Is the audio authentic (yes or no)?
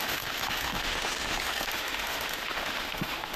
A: no